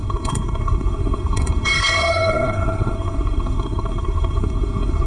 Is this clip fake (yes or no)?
yes